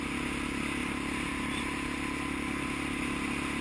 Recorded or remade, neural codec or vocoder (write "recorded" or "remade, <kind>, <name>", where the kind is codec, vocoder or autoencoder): recorded